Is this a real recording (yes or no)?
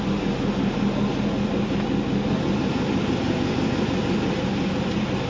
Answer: yes